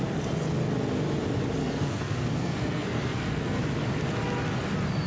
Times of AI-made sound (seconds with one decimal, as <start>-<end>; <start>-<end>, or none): 1.6-3.6